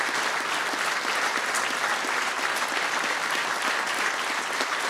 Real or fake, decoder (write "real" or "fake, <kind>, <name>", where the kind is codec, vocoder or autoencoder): real